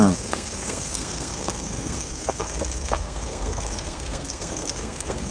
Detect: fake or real fake